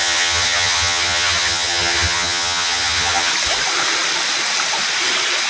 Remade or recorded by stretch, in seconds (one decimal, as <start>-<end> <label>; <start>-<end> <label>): 0.0-3.3 remade; 3.3-5.5 recorded